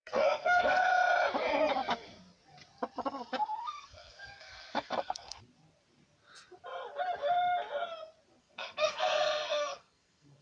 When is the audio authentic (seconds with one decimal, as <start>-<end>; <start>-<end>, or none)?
0.9-3.6; 5.4-8.4